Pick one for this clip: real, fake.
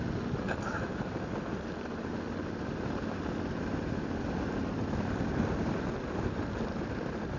real